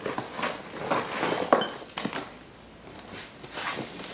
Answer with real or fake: real